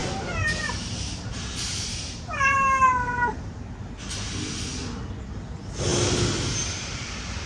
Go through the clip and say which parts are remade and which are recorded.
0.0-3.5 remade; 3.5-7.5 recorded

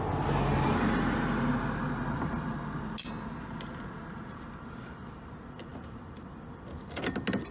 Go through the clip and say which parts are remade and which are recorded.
0.0-7.5 recorded

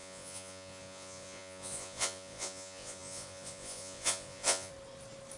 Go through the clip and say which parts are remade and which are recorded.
0.0-4.7 remade; 4.7-5.4 recorded